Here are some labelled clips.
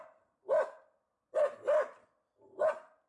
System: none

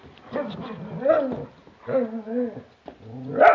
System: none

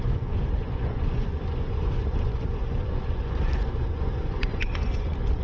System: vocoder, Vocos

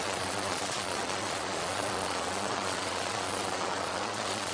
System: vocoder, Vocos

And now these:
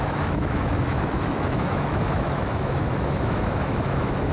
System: autoencoder, DAC-VAE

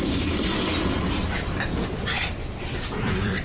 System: vocoder, BigVGAN v2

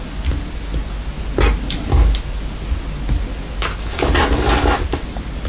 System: none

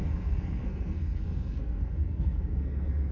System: codec, SNAC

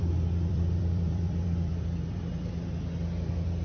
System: vocoder, BigVGAN v2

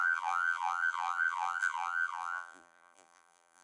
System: vocoder, BigVGAN v2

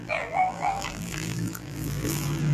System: vocoder, BigVGAN v2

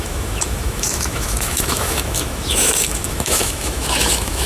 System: autoencoder, DAC-VAE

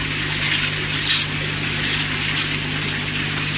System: none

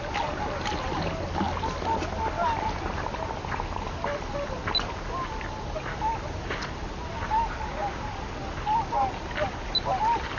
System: none